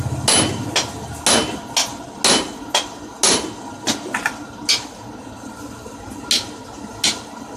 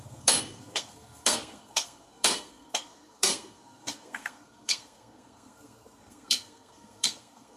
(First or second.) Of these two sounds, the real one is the first